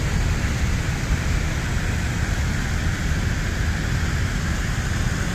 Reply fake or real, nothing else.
real